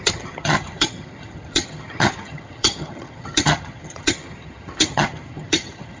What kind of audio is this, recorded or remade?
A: remade